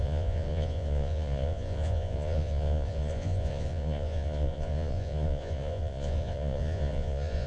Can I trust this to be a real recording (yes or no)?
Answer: no